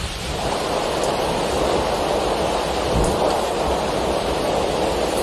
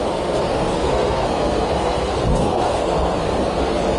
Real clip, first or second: first